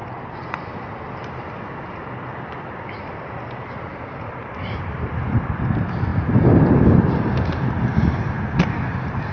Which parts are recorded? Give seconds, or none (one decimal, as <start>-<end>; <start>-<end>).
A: 0.0-3.9; 5.2-9.3